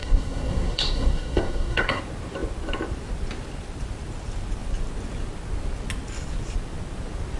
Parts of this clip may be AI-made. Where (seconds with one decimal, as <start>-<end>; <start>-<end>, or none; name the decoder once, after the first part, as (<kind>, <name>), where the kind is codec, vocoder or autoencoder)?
0.0-2.0 (codec, SNAC)